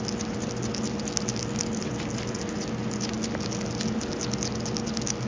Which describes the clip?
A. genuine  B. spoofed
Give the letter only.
A